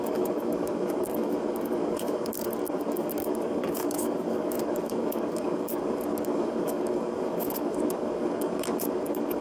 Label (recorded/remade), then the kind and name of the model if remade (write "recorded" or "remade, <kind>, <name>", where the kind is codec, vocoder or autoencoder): remade, codec, DAC